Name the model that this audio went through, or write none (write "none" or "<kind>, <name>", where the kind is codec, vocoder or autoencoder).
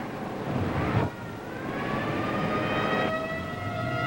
none